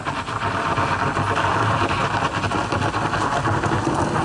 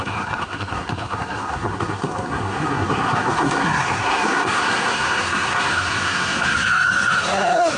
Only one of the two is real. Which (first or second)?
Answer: first